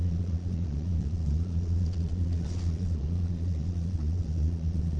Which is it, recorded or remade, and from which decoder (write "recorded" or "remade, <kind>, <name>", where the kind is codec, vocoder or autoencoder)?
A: remade, vocoder, Vocos